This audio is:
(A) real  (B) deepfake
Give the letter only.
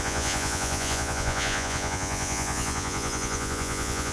B